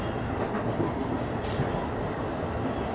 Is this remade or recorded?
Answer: recorded